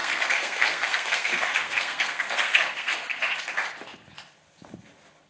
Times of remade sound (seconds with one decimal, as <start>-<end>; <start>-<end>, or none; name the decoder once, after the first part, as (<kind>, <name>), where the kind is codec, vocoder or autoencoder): 0.0-3.2 (codec, SNAC)